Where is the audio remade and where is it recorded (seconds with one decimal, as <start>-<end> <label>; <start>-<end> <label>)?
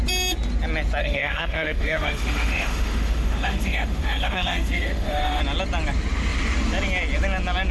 0.0-1.0 recorded; 1.0-5.4 remade; 5.4-7.7 recorded